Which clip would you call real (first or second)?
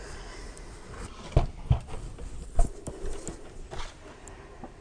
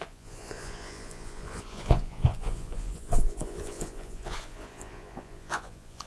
first